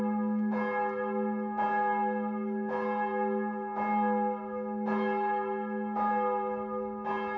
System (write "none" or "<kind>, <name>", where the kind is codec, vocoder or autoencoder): none